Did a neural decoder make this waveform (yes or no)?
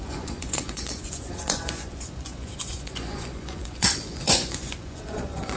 yes